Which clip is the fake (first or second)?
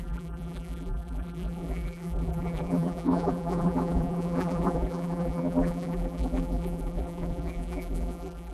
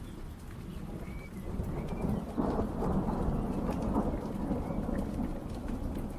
first